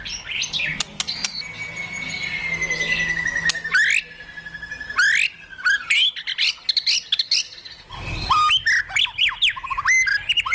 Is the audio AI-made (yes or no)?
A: no